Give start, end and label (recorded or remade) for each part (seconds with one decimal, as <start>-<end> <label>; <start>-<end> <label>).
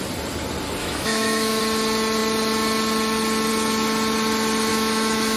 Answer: 0.0-0.8 recorded; 0.8-1.6 remade; 1.6-4.7 recorded; 4.7-5.4 remade